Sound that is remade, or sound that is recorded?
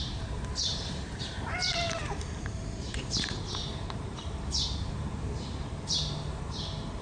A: remade